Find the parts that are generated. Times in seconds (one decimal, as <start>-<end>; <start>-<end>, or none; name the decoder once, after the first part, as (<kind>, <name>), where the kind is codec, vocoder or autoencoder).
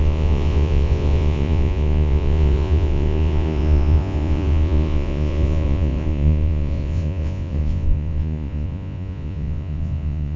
0.0-10.4 (vocoder, Vocos)